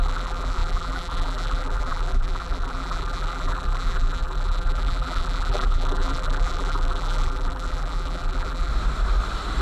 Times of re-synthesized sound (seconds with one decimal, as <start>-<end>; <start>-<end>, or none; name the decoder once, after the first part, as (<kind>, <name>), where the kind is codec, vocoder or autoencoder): 0.0-8.7 (vocoder, BigVGAN v2)